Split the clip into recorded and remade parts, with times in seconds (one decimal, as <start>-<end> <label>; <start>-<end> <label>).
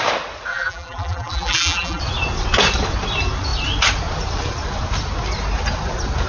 0.0-0.5 recorded; 0.5-2.0 remade; 2.0-6.3 recorded